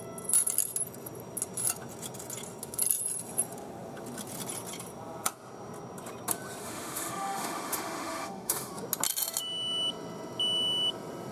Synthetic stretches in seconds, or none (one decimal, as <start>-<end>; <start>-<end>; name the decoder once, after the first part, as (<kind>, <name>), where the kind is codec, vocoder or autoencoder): 6.6-8.7 (autoencoder, DAC-VAE)